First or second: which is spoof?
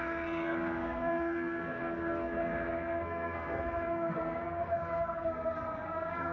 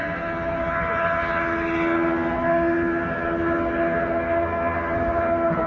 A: first